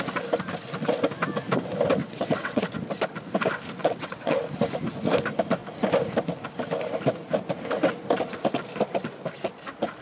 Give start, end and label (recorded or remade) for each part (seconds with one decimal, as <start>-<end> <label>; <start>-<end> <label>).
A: 0.0-2.0 recorded; 2.0-2.6 remade; 2.6-3.8 recorded; 3.8-4.4 remade; 4.4-10.0 recorded